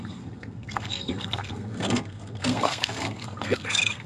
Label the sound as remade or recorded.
remade